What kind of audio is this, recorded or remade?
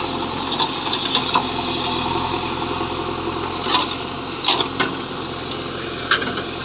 recorded